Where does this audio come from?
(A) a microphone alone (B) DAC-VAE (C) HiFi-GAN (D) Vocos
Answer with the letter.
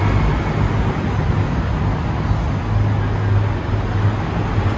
A